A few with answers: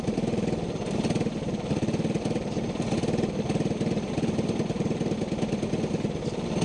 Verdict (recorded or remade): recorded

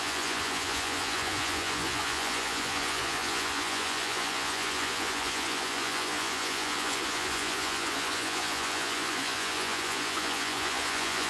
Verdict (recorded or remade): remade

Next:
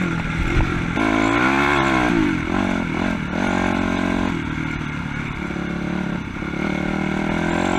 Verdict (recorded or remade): recorded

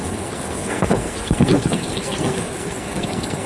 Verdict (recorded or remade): remade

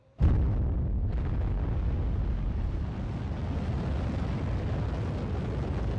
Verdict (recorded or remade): recorded